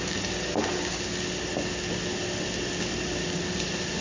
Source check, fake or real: real